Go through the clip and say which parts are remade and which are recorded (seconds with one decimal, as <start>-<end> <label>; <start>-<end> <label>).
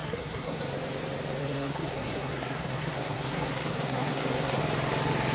0.0-0.6 remade; 0.6-1.4 recorded; 1.4-4.6 remade; 4.6-5.3 recorded